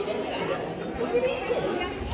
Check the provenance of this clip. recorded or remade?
recorded